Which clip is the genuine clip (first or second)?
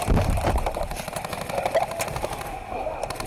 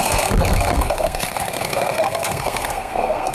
first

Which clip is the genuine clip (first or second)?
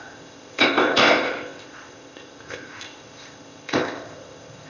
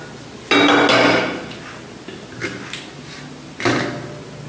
second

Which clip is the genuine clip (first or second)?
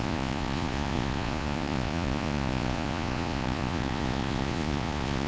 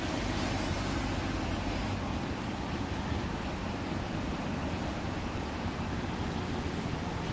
second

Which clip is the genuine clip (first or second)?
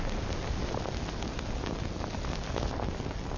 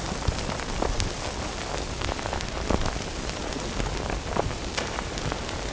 first